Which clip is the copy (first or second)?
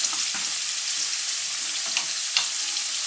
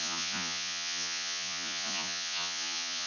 second